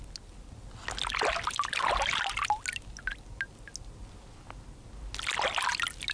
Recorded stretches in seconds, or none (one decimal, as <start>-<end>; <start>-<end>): 0.0-6.1